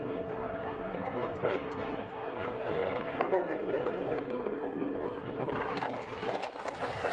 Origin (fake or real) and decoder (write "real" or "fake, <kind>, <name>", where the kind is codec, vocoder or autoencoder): fake, codec, SNAC